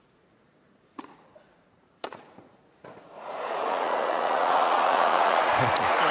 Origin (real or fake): fake